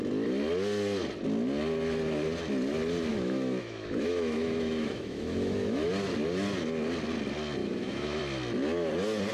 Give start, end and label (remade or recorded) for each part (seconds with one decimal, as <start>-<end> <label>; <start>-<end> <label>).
0.0-3.1 recorded; 3.1-5.9 remade; 5.9-7.6 recorded; 7.6-8.2 remade; 8.2-9.3 recorded